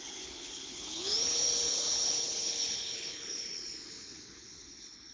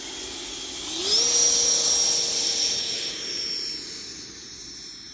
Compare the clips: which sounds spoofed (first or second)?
first